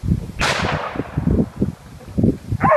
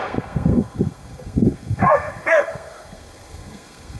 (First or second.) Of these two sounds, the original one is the first